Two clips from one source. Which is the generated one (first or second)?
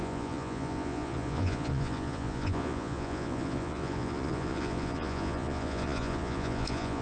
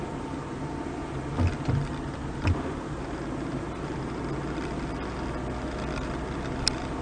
first